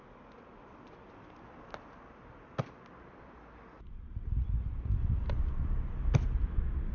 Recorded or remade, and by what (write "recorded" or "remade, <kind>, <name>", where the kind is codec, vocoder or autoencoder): recorded